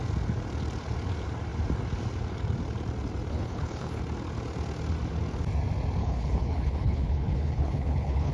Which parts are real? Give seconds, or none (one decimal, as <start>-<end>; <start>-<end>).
0.0-3.3; 4.0-6.0